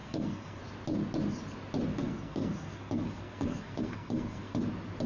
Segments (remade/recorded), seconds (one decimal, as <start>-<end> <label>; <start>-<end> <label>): 0.0-0.6 remade; 0.6-1.9 recorded; 1.9-4.6 remade; 4.6-5.1 recorded